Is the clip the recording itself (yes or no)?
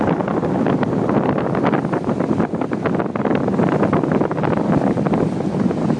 yes